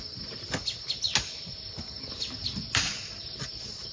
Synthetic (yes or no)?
no